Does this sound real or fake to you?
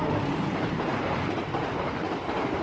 fake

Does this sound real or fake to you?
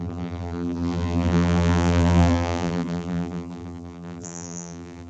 fake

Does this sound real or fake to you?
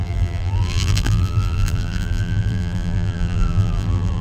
fake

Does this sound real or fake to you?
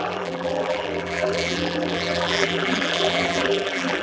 fake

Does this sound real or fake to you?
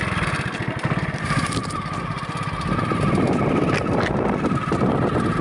real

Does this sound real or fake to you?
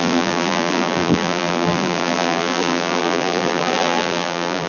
fake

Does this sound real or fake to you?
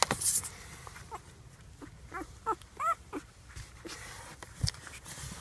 real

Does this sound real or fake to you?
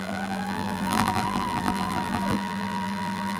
fake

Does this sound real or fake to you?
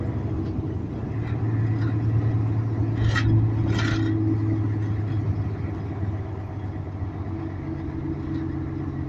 real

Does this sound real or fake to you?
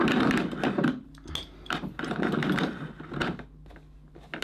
real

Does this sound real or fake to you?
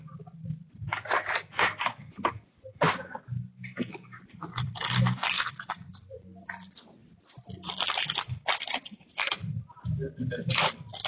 fake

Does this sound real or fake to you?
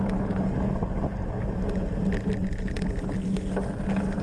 real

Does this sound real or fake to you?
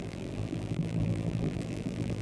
fake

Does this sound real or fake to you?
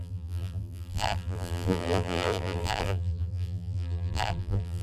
fake